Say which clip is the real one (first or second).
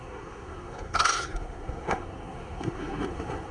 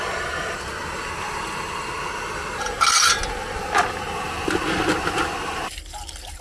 second